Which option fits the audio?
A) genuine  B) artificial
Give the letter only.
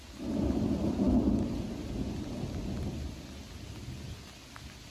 A